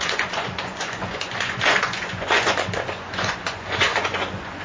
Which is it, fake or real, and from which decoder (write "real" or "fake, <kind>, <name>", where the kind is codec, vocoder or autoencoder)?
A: fake, vocoder, Vocos